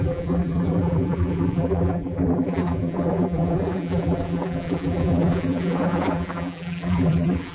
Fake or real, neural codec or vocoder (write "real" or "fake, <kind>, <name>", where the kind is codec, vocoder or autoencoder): fake, vocoder, BigVGAN v2